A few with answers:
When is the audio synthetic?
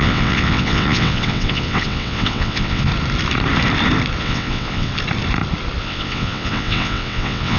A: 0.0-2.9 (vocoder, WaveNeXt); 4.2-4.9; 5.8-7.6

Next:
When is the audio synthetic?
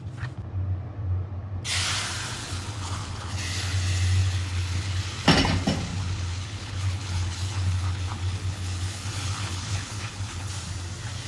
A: 2.4-3.4 (codec, HILCodec); 4.2-5.0; 5.9-10.5